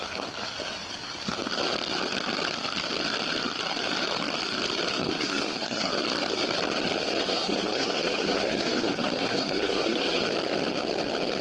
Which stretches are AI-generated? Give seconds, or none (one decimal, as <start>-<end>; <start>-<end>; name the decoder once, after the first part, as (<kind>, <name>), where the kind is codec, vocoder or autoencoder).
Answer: 5.0-5.9 (codec, SNAC); 7.2-10.2